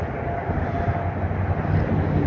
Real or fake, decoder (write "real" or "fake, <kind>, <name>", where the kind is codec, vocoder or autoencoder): real